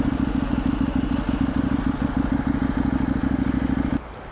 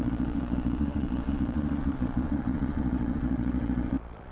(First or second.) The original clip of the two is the first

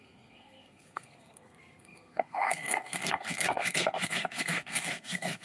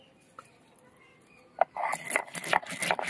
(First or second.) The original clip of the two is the second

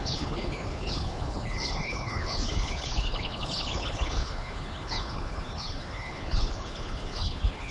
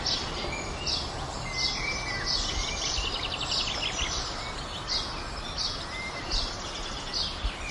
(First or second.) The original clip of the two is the second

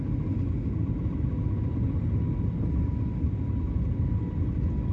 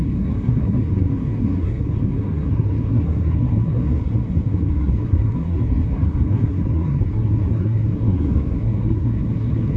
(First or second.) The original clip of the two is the first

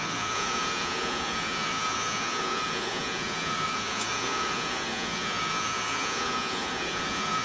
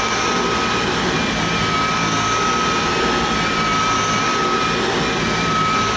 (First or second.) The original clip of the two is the second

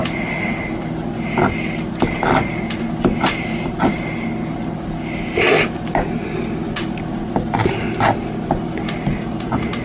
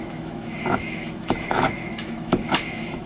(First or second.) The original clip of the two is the first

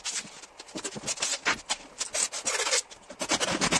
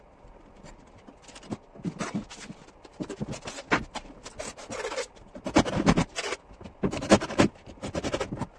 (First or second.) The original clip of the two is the first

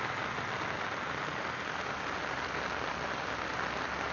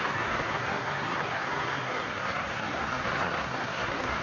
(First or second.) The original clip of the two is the first